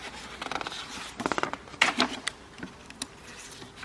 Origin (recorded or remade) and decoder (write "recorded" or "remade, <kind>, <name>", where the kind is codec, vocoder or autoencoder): recorded